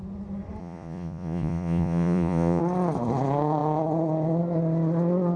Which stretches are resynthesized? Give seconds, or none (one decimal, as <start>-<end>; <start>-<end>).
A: 0.6-2.6